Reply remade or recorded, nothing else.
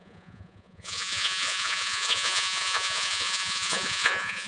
remade